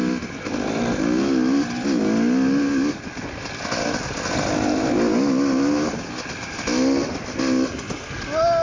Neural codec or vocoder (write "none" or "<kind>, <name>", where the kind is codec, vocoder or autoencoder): none